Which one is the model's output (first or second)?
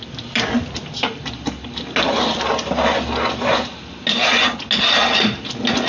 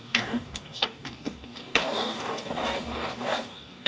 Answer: second